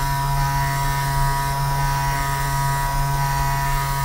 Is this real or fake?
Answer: real